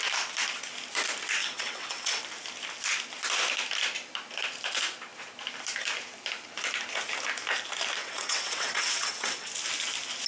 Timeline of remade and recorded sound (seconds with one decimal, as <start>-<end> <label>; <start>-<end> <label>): 0.0-1.4 recorded; 1.4-2.2 remade; 2.2-8.0 recorded; 8.0-9.5 remade; 9.5-10.3 recorded